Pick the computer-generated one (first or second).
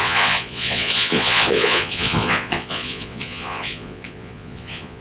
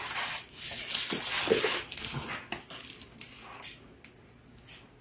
first